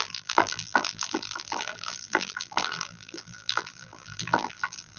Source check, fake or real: fake